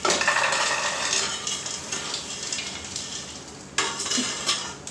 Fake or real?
real